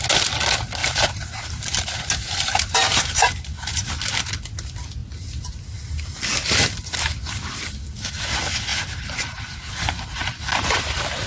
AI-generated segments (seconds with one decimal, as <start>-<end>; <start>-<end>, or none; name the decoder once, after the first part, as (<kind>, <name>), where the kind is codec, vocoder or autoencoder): 0.8-3.9 (vocoder, BigVGAN v2); 8.7-9.7